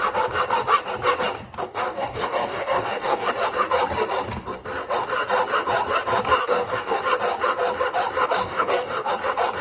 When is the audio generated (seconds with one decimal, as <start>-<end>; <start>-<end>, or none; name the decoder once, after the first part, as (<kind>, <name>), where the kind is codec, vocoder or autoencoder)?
1.6-3.3 (codec, DAC); 6.4-7.0; 8.4-9.1